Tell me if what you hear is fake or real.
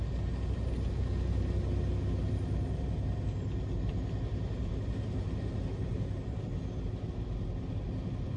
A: real